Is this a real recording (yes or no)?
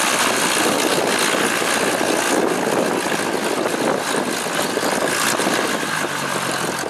yes